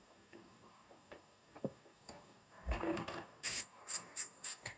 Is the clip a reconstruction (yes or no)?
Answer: yes